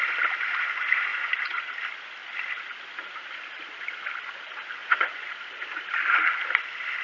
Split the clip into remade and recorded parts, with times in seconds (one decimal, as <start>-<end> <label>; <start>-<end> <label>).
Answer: 0.0-1.1 recorded; 1.1-1.7 remade; 1.7-4.8 recorded; 4.8-5.4 remade; 5.4-7.0 recorded